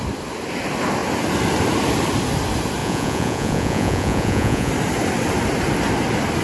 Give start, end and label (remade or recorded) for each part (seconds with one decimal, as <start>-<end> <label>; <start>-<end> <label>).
0.0-2.8 recorded; 2.8-4.7 remade; 4.7-6.4 recorded